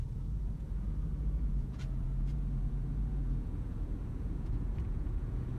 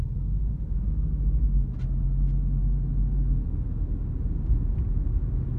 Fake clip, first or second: first